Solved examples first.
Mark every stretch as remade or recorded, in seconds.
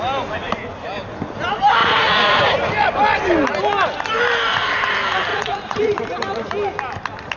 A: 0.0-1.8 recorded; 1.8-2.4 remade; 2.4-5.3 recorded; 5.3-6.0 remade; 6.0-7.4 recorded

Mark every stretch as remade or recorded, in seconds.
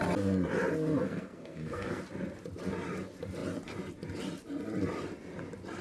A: 0.0-1.0 recorded; 1.0-2.0 remade; 2.0-5.8 recorded